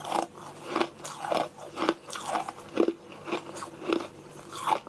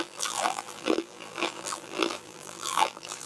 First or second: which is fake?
second